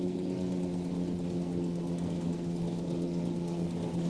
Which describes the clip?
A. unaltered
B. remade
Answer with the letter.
B